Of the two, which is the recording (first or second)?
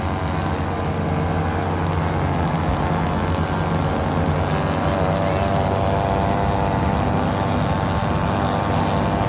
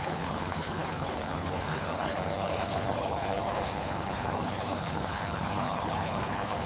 first